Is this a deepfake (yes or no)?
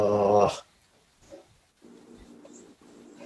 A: no